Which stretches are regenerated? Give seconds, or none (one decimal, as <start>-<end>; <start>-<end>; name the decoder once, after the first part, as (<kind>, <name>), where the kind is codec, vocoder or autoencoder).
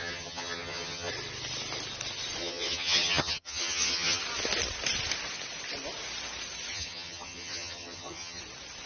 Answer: 0.0-1.1 (vocoder, HiFi-GAN); 2.4-4.2; 6.7-8.4